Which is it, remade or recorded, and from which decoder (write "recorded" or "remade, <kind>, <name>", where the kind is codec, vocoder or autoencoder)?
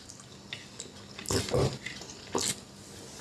recorded